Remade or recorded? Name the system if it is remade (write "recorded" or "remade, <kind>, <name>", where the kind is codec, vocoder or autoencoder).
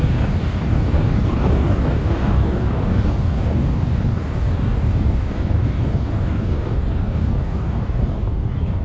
remade, codec, DAC